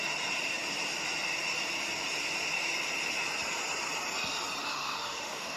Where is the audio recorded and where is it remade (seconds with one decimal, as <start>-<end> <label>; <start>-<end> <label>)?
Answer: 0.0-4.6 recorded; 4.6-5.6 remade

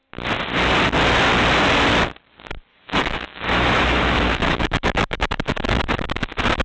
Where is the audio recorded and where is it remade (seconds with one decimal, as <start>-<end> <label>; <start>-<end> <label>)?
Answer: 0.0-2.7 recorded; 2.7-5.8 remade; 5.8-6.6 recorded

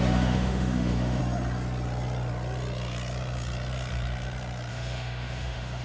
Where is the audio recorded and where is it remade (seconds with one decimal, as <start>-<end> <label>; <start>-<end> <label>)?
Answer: 0.0-1.2 remade; 1.2-4.7 recorded; 4.7-5.8 remade

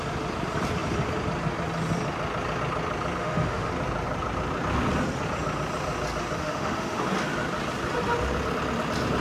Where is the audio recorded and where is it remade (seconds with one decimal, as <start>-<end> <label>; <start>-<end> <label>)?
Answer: 0.0-3.2 recorded; 3.2-3.7 remade; 3.7-6.4 recorded; 6.4-7.0 remade; 7.0-9.2 recorded